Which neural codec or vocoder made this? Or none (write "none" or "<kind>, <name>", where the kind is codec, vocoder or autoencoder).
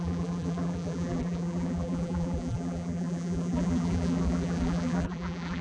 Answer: vocoder, BigVGAN v2